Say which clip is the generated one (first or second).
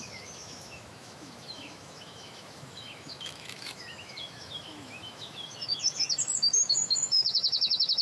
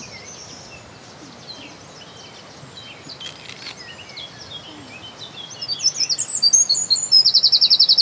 first